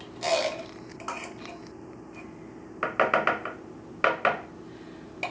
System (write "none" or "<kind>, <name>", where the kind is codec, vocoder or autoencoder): none